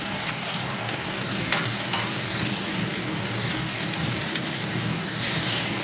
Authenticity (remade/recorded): remade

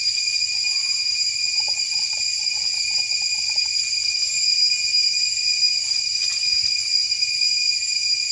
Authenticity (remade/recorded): recorded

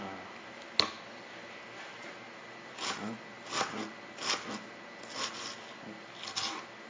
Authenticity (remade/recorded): recorded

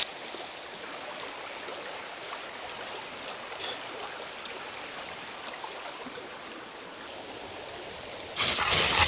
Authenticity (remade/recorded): recorded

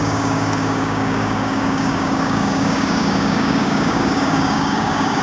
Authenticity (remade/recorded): remade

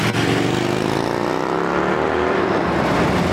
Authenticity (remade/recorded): recorded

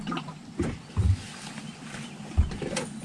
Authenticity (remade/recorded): recorded